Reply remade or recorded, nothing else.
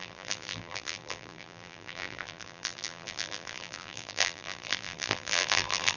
remade